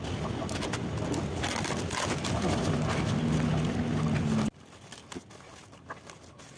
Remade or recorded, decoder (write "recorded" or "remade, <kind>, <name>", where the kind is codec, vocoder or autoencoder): recorded